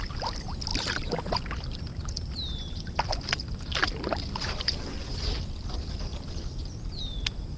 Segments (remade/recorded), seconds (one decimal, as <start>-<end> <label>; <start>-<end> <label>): 0.0-0.7 recorded; 0.7-4.6 remade; 4.6-7.6 recorded